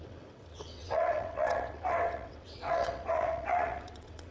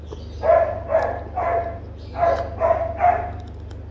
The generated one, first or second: first